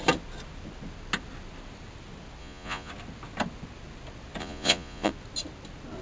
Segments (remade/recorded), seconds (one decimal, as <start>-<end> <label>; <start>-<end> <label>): 0.0-2.4 recorded; 2.4-2.9 remade; 2.9-4.4 recorded; 4.4-5.1 remade; 5.1-6.0 recorded